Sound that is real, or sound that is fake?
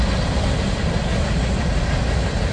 real